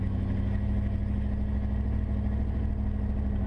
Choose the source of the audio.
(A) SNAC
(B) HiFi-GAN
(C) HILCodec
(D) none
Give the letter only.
D